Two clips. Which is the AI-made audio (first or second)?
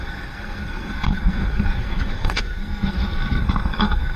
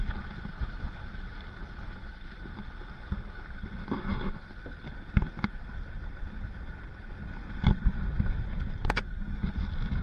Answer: first